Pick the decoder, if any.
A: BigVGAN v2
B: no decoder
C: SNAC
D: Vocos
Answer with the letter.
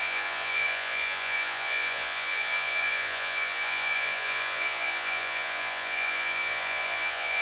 D